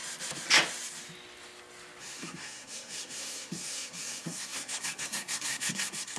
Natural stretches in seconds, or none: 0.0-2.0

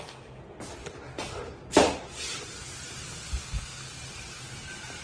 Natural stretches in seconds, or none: 0.4-3.4; 3.8-5.0